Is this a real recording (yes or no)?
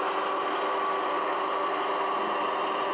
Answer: yes